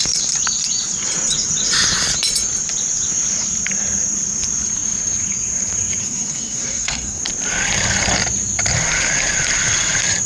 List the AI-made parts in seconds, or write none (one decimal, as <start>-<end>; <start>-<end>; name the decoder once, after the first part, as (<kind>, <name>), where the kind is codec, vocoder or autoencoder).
6.0-7.2 (codec, SNAC)